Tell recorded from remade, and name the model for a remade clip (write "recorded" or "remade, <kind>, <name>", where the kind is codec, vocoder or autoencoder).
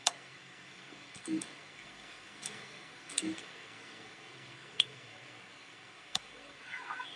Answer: remade, codec, SNAC